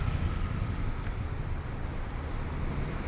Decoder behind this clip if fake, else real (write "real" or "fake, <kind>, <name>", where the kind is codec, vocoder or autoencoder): real